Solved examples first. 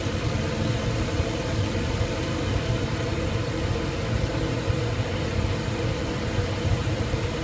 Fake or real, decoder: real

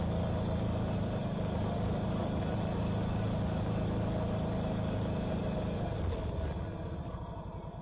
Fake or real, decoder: real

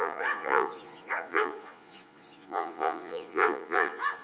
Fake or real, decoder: fake, vocoder, Vocos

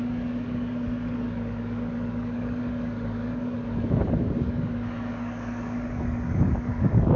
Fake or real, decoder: fake, codec, DAC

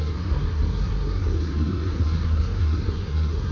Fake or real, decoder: fake, codec, SNAC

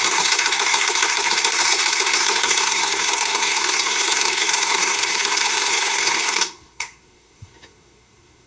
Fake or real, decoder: fake, codec, SNAC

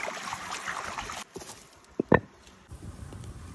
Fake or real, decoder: real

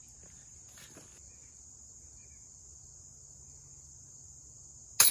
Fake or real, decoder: real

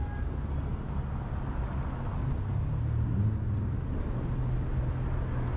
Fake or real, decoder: real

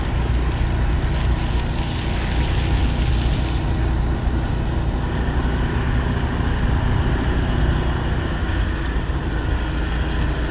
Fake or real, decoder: real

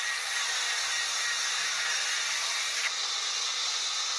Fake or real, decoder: real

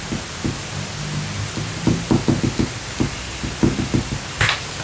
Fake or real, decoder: real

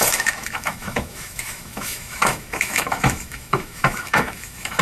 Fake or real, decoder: fake, autoencoder, DAC-VAE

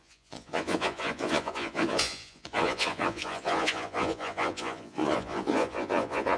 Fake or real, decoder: fake, vocoder, Vocos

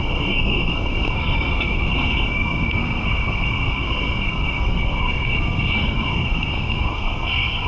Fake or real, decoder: fake, codec, SNAC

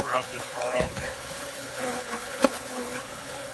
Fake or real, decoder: fake, codec, HILCodec